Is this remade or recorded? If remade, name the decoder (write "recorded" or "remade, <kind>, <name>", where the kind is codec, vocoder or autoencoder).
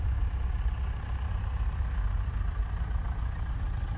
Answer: recorded